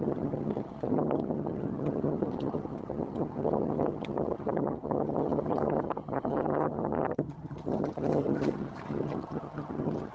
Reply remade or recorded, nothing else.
remade